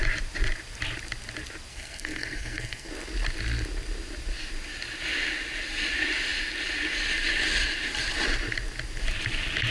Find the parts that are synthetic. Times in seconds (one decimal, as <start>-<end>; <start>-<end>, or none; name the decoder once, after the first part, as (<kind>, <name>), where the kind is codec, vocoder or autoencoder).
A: 1.7-2.9 (codec, SNAC)